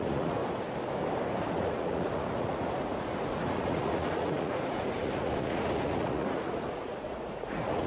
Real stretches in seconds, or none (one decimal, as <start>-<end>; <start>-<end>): 0.4-1.5